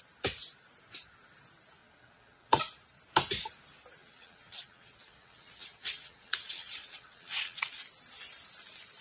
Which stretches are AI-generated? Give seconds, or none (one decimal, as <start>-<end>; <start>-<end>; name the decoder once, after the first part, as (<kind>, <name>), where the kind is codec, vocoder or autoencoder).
1.8-2.6 (vocoder, WaveNeXt); 4.0-7.7

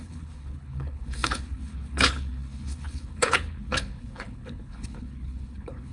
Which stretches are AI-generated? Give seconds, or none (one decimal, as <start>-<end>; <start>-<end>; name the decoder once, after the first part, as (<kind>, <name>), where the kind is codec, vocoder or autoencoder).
0.0-5.9 (codec, HILCodec)

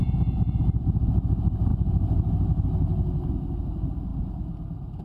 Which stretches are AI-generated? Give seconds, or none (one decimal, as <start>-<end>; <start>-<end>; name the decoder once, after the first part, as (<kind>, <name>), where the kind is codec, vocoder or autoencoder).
none